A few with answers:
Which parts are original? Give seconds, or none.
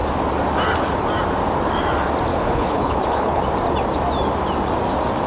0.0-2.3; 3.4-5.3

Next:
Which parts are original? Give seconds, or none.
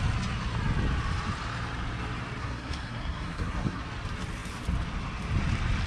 0.0-2.4; 3.8-5.9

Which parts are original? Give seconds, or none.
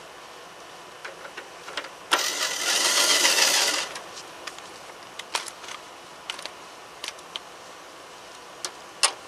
0.0-1.0; 2.0-9.3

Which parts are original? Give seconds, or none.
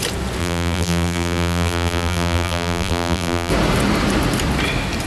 0.0-0.4; 3.5-5.1